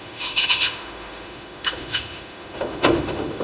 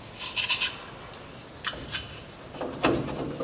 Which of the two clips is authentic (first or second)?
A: second